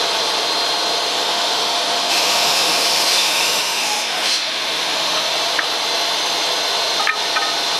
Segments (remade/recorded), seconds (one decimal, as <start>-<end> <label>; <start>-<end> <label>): 0.0-1.1 recorded; 1.1-5.3 remade; 5.3-7.8 recorded